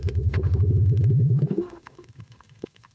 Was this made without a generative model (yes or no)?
no